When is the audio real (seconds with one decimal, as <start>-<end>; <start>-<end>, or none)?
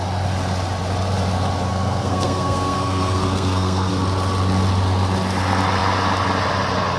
0.0-1.7; 3.9-7.0